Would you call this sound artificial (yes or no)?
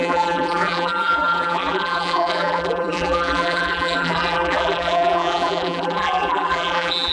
yes